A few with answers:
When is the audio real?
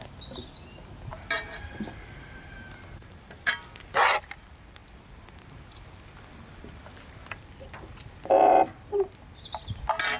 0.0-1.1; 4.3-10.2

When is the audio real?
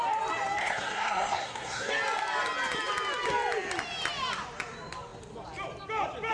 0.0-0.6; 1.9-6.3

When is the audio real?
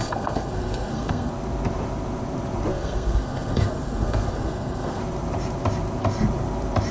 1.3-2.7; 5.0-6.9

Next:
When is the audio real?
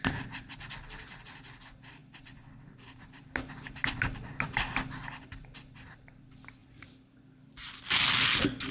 0.0-6.6; 8.2-8.7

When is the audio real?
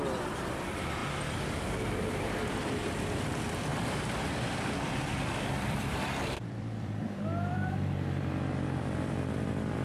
1.0-1.7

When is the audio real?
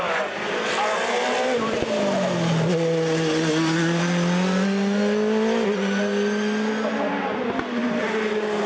0.0-7.8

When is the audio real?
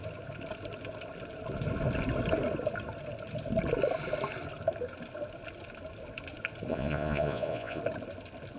0.0-6.7; 7.8-8.6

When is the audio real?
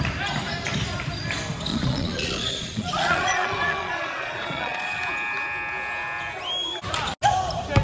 0.0-1.7; 5.0-7.8